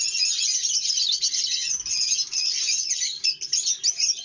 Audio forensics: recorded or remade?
recorded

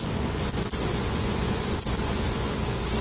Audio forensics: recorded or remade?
remade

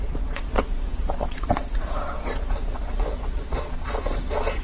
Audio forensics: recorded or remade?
remade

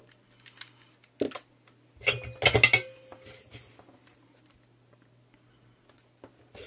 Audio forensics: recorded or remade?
recorded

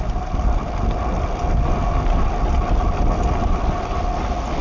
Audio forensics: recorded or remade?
recorded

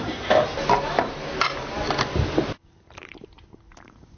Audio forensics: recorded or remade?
recorded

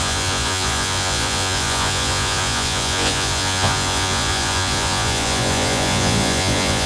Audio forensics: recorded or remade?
remade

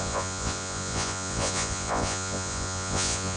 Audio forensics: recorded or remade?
remade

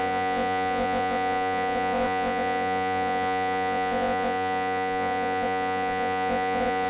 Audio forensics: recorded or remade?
remade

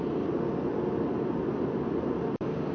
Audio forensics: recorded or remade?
recorded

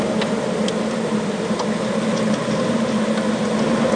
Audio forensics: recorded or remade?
recorded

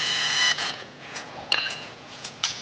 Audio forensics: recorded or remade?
remade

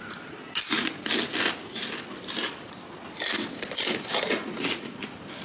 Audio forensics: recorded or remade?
recorded